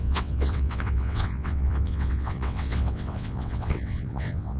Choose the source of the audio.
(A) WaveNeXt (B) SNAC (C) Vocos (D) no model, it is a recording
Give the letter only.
A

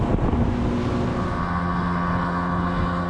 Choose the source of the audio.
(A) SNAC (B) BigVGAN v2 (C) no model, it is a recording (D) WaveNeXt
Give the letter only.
C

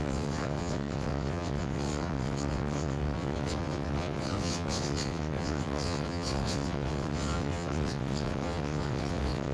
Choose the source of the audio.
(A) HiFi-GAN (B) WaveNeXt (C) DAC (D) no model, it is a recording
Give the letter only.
B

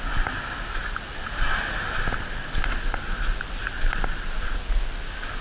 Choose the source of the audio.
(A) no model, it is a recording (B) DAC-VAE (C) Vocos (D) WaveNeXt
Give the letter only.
A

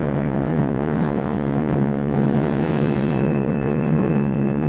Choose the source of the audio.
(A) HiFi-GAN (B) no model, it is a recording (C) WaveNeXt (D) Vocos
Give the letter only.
C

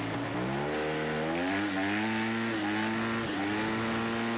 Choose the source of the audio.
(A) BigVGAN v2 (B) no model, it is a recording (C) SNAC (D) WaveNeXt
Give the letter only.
B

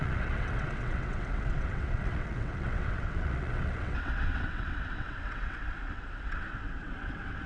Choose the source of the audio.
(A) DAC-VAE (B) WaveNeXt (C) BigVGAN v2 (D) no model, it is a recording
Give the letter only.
B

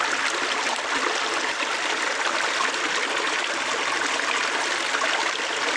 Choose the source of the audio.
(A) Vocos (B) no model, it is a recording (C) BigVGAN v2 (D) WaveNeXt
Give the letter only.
B